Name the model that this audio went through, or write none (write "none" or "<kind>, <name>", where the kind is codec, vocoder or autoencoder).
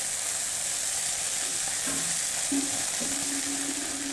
none